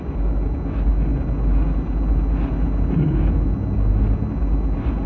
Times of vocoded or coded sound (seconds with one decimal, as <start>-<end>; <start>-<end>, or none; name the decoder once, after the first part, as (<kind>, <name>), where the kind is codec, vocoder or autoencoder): none